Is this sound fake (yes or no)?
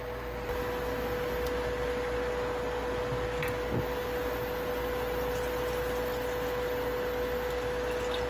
no